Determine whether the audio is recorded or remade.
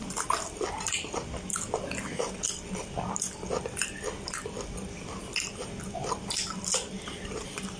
recorded